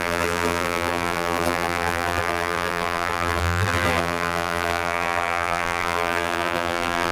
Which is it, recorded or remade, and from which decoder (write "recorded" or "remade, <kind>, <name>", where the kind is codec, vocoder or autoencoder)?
remade, vocoder, BigVGAN v2